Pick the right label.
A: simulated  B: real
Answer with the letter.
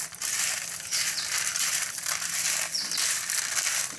B